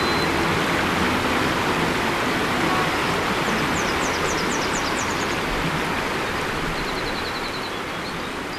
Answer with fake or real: real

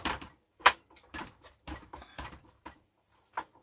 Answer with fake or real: fake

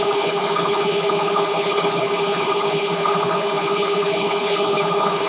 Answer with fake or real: fake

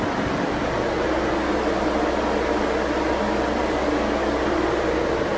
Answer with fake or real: real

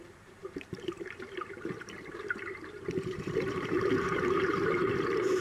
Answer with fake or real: fake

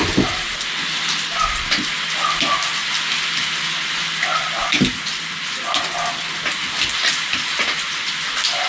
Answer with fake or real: real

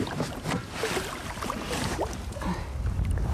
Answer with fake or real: real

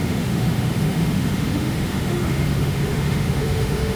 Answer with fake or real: fake